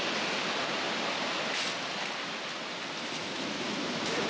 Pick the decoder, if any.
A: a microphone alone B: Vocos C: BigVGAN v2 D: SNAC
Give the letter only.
A